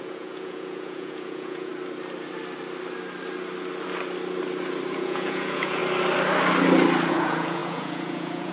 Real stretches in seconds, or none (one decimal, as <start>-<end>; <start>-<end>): 1.7-4.9; 5.8-7.1